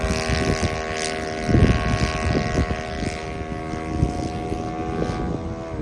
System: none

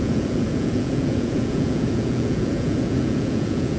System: vocoder, Vocos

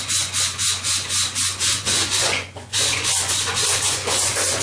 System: vocoder, Vocos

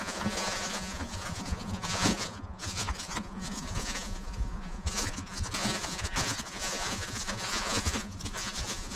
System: vocoder, Vocos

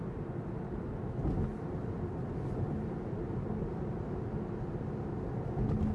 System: none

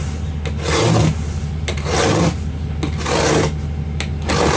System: none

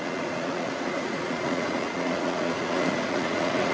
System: vocoder, Vocos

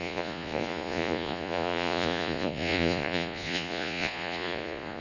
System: vocoder, Vocos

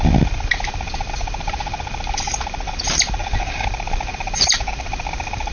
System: none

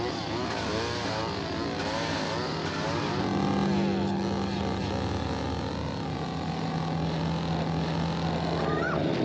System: none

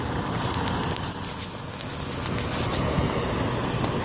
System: none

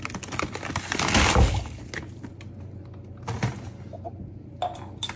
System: none